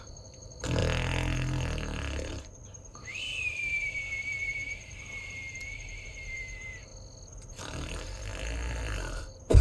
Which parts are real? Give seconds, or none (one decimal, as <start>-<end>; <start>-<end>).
0.8-2.3; 6.9-7.6; 8.3-9.2